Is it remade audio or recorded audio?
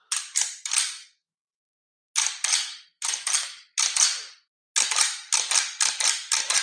recorded